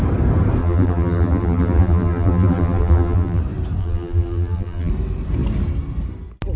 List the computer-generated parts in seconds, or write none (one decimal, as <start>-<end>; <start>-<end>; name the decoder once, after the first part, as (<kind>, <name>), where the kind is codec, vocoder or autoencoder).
0.6-3.4 (vocoder, BigVGAN v2); 3.8-4.9